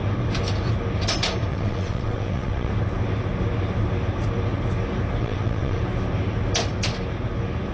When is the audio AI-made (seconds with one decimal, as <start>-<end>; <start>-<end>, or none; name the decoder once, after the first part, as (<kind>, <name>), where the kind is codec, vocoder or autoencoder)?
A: 1.5-2.7 (vocoder, WaveNeXt); 5.2-5.8